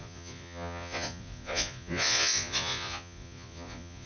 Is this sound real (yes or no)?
no